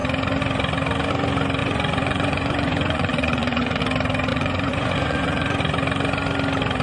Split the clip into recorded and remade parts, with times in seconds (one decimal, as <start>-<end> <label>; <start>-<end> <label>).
0.0-1.6 recorded; 1.6-3.8 remade; 3.8-4.3 recorded; 4.3-5.6 remade; 5.6-6.8 recorded